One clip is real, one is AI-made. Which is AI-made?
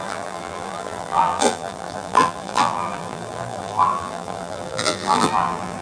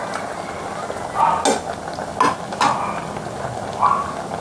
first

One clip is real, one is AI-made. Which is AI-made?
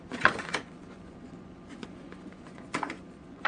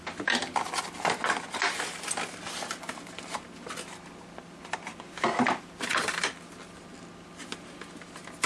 first